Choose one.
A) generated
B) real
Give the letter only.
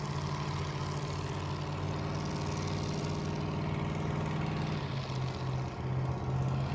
B